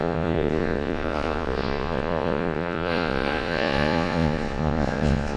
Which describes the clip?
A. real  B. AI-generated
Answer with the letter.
B